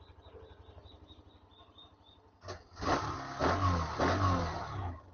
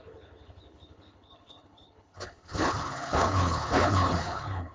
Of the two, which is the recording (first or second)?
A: first